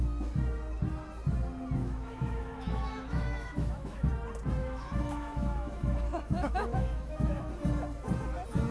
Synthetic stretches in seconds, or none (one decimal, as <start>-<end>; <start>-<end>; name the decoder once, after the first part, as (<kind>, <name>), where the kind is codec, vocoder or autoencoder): 1.8-4.1 (autoencoder, DAC-VAE); 4.6-7.5